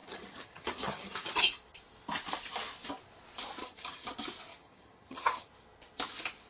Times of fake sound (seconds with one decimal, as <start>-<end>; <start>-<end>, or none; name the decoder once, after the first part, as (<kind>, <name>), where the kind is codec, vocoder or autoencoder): 0.0-1.4 (vocoder, HiFi-GAN); 3.6-4.1; 4.5-5.5